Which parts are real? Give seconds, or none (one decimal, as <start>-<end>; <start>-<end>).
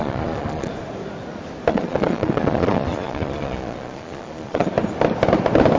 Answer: 0.7-1.7; 4.7-5.8